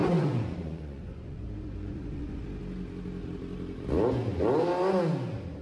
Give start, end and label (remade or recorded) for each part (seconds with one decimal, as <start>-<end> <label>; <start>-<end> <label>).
0.0-2.4 remade; 2.4-5.6 recorded